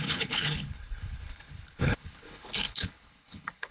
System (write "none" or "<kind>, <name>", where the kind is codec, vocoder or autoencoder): codec, HILCodec